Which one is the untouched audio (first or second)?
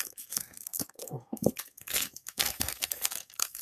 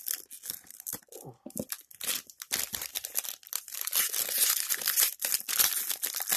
second